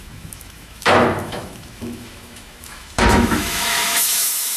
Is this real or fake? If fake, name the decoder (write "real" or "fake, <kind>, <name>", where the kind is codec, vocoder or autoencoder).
fake, autoencoder, DAC-VAE